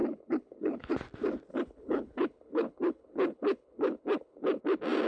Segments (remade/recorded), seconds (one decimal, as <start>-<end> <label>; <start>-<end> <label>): 0.0-0.9 remade; 0.9-1.5 recorded; 1.5-4.6 remade; 4.6-5.1 recorded